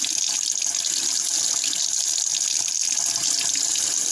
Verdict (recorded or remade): recorded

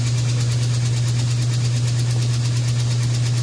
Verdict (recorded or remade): recorded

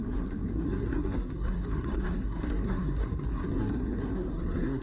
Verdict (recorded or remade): remade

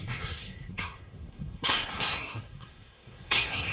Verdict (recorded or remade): remade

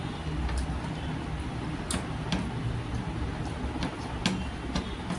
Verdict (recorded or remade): recorded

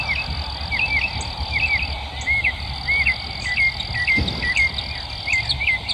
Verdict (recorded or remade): recorded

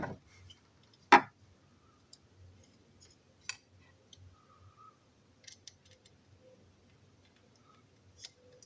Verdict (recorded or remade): recorded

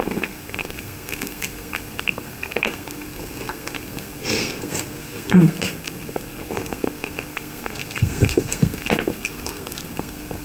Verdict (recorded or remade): remade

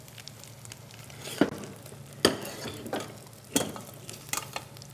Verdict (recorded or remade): recorded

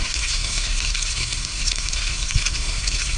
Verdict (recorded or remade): remade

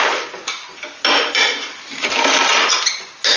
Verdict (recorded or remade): recorded